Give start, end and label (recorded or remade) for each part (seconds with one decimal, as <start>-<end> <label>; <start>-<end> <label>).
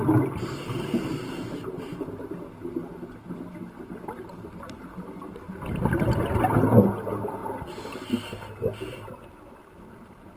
0.0-10.4 recorded